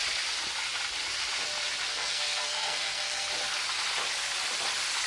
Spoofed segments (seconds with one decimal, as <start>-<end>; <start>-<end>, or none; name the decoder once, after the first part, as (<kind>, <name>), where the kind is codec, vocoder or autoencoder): 1.9-3.3 (codec, SNAC)